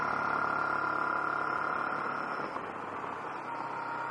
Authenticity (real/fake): real